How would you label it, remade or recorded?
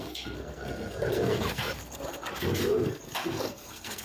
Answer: remade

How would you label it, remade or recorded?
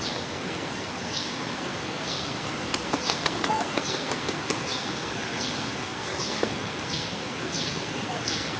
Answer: remade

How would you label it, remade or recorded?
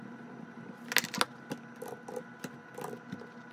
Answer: recorded